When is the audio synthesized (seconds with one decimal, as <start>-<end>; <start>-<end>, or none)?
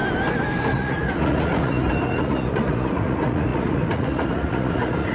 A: 0.7-5.1